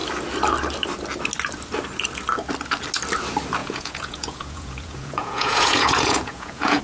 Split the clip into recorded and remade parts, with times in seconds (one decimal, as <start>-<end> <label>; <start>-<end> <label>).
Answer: 0.0-3.6 recorded; 3.6-6.8 remade